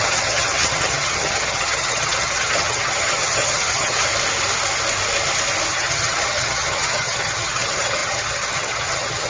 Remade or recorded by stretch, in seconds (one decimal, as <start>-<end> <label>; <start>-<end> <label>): 0.0-4.1 remade; 4.1-5.7 recorded; 5.7-9.3 remade